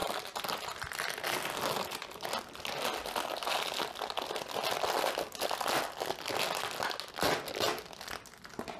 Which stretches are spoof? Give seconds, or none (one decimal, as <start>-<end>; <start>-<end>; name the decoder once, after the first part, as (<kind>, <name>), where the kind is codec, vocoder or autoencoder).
none